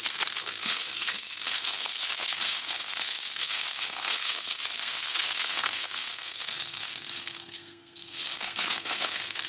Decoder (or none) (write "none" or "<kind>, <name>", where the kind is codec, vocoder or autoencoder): codec, SNAC